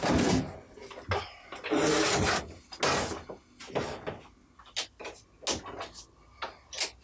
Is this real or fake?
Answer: real